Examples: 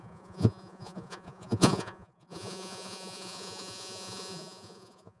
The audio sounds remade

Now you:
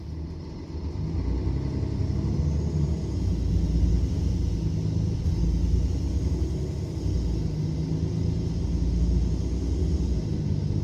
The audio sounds recorded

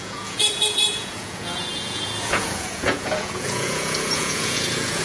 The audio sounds remade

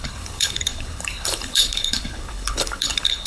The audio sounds remade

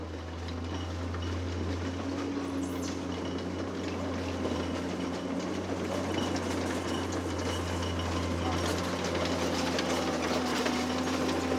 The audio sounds recorded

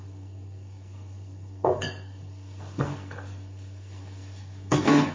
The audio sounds remade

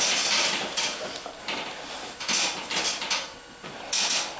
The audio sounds recorded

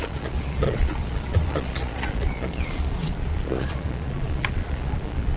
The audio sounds remade